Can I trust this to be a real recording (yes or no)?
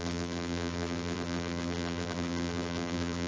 no